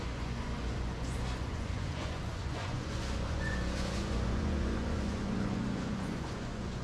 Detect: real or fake fake